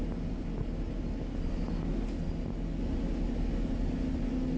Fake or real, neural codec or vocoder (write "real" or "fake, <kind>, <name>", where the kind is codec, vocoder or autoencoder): real